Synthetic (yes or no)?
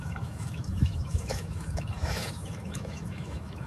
yes